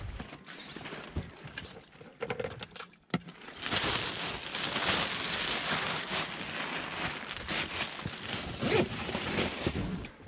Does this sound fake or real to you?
real